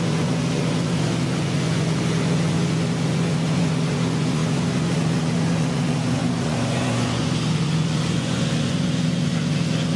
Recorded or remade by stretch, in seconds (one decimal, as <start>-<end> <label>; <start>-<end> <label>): 0.0-10.0 remade